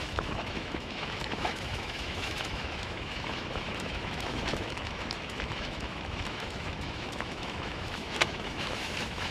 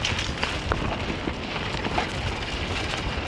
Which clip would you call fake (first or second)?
first